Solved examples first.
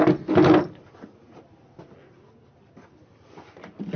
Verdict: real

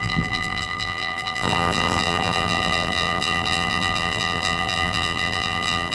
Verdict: fake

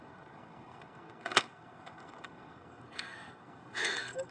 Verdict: fake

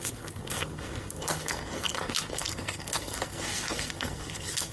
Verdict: fake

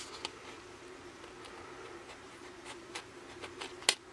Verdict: real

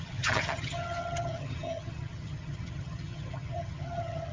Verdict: fake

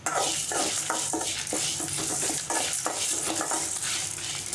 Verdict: real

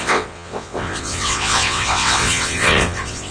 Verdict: fake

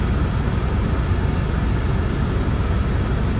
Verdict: real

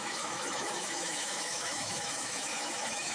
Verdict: fake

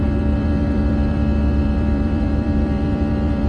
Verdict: fake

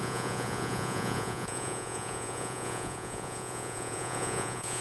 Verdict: fake